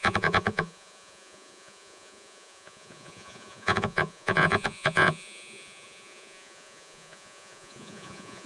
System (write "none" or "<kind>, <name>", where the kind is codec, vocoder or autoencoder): vocoder, Vocos